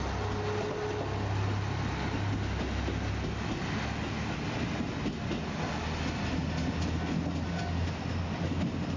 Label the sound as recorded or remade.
recorded